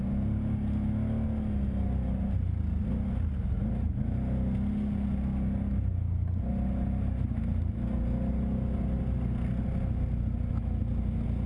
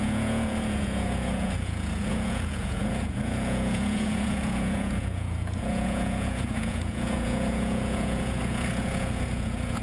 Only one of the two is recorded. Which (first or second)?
first